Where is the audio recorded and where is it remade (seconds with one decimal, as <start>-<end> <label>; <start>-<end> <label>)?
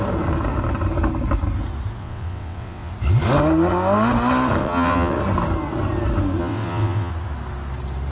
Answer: 0.0-2.0 recorded; 2.0-2.9 remade; 2.9-4.6 recorded; 4.6-5.2 remade; 5.2-6.4 recorded; 6.4-7.1 remade; 7.1-8.1 recorded